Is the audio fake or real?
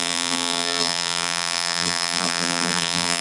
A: fake